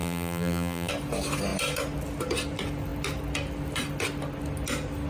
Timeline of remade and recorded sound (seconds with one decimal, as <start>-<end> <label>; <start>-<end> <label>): 0.0-0.9 remade; 0.9-5.1 recorded